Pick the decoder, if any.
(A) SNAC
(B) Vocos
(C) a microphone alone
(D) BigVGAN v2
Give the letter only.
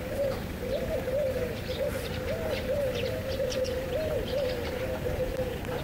D